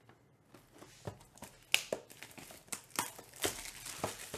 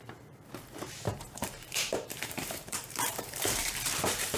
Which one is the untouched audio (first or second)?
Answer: first